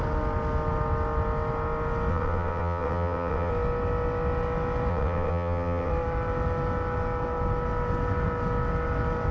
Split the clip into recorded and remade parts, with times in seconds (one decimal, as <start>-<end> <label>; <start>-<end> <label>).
0.0-2.1 recorded; 2.1-3.5 remade; 3.5-4.9 recorded; 4.9-5.9 remade; 5.9-9.3 recorded